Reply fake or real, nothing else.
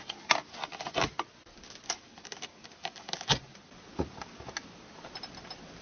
real